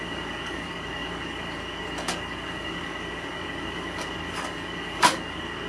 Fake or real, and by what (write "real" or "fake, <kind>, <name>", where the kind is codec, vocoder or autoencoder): fake, codec, DAC